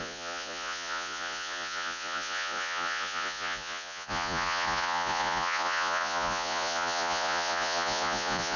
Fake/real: fake